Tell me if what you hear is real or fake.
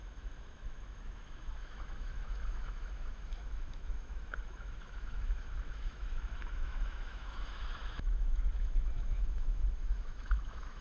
fake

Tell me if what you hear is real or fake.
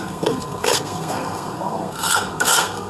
fake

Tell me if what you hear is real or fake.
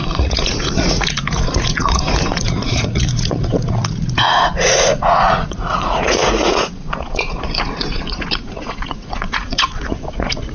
fake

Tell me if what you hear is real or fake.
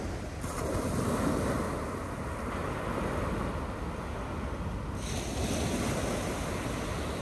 real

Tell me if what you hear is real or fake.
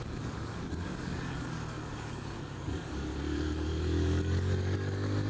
fake